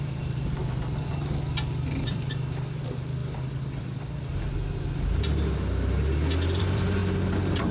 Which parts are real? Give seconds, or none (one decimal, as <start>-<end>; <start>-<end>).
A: 0.6-2.0; 3.2-4.0; 5.4-6.6; 7.0-7.7

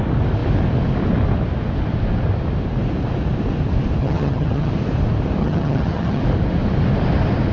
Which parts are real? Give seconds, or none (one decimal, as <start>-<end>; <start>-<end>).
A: 0.0-4.0; 4.7-5.4; 6.2-7.5

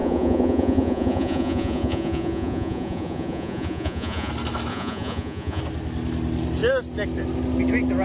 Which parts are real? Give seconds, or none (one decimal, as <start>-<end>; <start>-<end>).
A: 4.3-4.7; 5.6-8.0

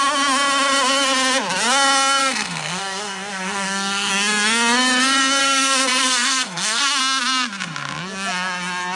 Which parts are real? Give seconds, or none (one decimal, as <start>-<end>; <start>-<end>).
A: 0.0-2.2; 4.1-5.4; 7.0-8.9

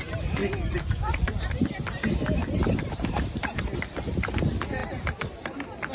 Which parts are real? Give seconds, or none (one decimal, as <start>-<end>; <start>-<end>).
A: 0.0-5.9

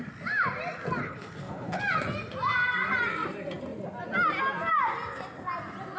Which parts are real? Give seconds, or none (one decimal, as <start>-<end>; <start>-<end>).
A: 0.0-1.0; 1.8-6.0

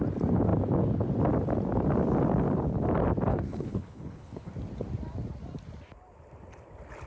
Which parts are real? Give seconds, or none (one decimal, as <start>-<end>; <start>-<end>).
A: 0.0-3.3; 4.5-7.1

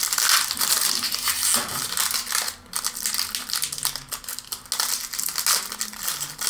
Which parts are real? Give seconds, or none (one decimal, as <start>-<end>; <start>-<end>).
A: 0.0-6.5